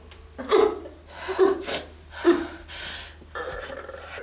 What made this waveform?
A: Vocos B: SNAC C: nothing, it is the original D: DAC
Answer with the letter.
C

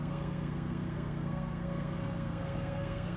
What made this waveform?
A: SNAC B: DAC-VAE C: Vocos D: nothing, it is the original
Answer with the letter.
A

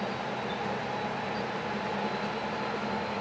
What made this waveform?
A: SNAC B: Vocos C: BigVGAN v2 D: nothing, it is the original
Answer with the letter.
D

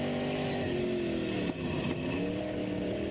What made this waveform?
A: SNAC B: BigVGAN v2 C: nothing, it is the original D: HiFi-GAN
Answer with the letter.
C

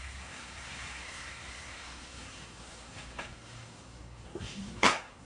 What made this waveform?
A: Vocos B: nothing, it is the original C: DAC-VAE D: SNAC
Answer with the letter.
D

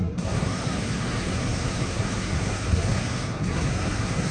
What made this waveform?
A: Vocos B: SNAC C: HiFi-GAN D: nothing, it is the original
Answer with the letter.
B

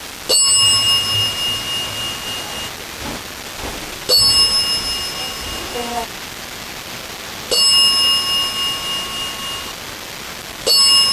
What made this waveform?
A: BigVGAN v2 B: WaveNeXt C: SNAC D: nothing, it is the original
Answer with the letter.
D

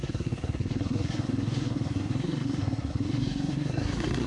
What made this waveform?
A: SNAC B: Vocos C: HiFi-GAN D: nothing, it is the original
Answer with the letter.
A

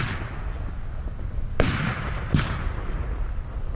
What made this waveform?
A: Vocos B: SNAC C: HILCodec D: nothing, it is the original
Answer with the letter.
D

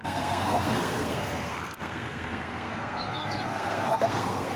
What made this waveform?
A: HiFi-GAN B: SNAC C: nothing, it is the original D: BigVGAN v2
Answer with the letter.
B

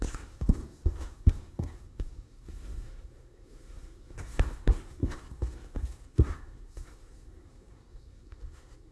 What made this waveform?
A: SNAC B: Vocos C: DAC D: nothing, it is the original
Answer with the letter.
A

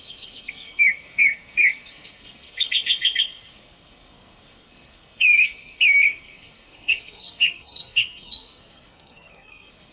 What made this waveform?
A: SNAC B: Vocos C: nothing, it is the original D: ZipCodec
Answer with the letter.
A